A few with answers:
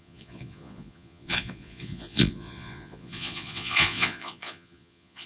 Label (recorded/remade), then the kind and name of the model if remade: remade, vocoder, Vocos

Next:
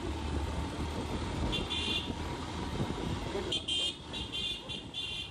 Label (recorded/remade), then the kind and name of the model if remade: recorded